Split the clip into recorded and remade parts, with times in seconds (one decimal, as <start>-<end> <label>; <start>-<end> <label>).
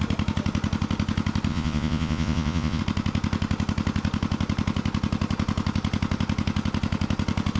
0.0-1.5 recorded; 1.5-2.8 remade; 2.8-7.6 recorded